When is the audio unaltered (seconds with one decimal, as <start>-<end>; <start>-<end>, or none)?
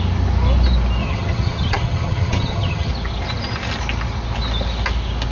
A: 0.0-1.0; 2.9-5.3